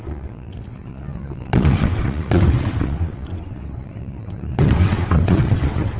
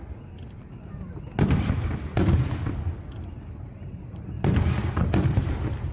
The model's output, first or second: first